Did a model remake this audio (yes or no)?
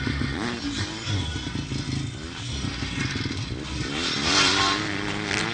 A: no